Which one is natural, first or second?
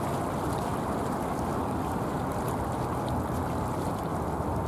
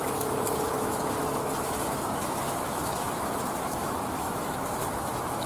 first